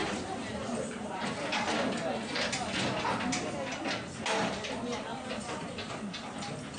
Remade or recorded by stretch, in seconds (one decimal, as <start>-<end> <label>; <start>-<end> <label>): 0.0-1.3 remade; 1.3-5.1 recorded; 5.1-5.8 remade; 5.8-6.8 recorded